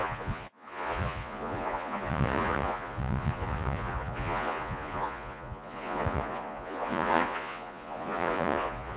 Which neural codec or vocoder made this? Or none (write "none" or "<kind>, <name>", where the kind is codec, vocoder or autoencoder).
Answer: vocoder, Vocos